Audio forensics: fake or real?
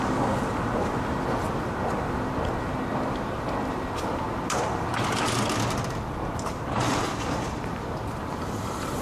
real